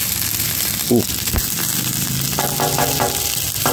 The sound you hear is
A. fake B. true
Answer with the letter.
B